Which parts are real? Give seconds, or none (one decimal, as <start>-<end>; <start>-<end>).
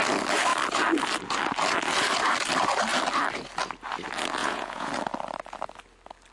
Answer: 0.0-4.4; 4.9-6.3